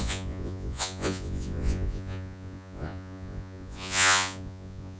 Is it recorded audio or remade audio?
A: remade